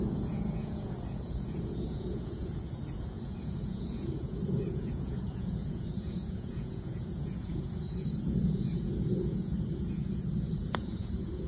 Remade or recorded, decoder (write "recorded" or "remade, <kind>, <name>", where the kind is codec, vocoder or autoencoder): remade, vocoder, Vocos